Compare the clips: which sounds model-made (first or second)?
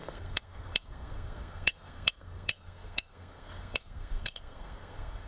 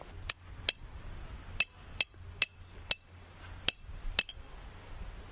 first